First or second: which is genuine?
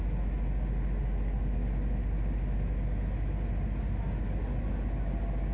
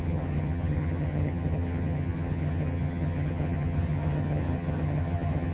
first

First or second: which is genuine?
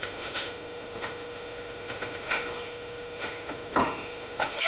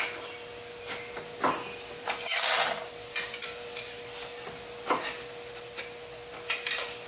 second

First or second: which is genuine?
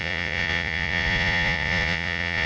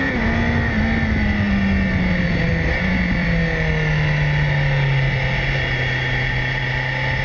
second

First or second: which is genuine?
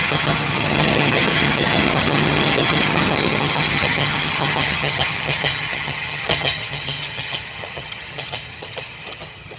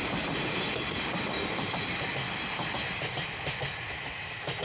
second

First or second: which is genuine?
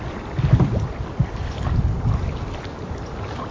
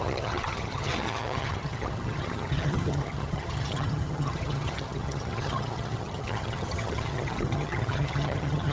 first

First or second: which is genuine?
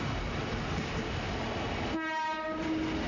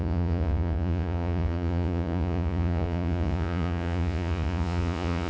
first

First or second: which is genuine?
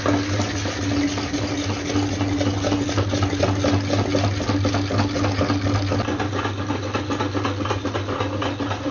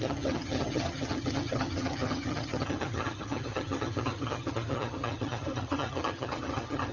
first